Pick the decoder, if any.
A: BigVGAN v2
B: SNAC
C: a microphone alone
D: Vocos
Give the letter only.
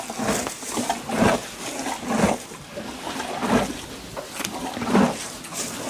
C